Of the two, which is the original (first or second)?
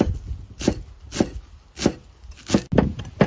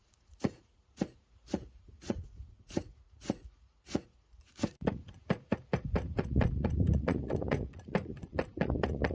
first